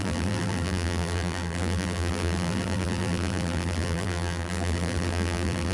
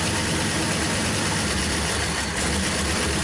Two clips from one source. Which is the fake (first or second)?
first